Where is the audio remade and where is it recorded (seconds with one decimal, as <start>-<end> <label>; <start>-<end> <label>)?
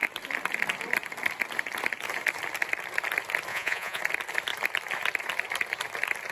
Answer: 0.0-3.5 recorded; 3.5-4.0 remade; 4.0-6.3 recorded